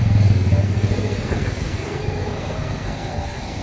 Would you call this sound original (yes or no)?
no